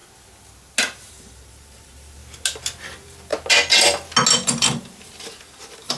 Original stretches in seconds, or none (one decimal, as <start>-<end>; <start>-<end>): 0.0-1.1; 2.2-2.8; 3.3-4.8